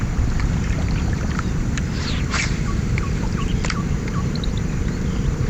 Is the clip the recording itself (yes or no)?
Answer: no